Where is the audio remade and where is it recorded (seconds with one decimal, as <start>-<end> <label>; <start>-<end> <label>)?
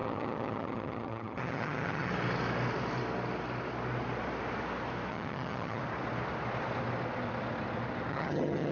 0.0-2.1 remade; 2.1-5.1 recorded; 5.1-5.8 remade; 5.8-8.1 recorded; 8.1-8.7 remade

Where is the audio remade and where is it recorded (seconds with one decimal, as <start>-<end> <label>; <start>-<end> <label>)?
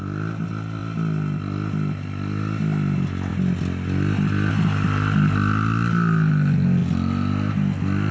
0.0-8.1 recorded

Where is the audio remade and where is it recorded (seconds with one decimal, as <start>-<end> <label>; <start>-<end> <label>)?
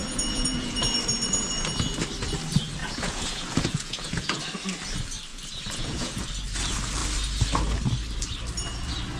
0.0-0.8 remade; 0.8-2.8 recorded; 2.8-4.4 remade; 4.4-5.3 recorded; 5.3-6.2 remade; 6.2-9.2 recorded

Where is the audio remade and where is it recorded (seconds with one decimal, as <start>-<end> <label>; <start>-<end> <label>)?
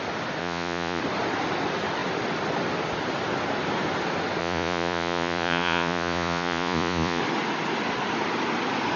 0.0-0.4 recorded; 0.4-1.0 remade; 1.0-4.4 recorded; 4.4-7.2 remade; 7.2-9.0 recorded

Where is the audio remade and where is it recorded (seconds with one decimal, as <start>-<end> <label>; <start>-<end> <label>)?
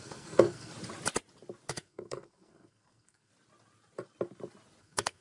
0.0-0.7 remade; 0.7-1.7 recorded; 1.7-3.3 remade; 3.3-4.8 recorded; 4.8-5.2 remade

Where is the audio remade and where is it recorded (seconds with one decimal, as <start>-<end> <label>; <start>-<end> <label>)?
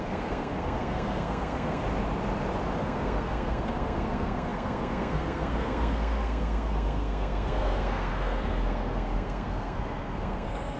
0.0-1.8 remade; 1.8-2.8 recorded; 2.8-10.8 remade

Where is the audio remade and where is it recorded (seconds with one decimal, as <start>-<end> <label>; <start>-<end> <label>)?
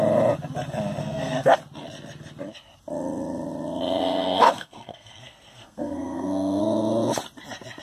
0.0-1.0 recorded; 1.0-1.6 remade; 1.6-4.0 recorded; 4.0-6.6 remade; 6.6-7.8 recorded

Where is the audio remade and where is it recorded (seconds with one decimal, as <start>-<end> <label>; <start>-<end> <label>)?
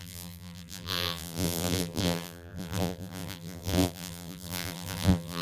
0.0-5.4 remade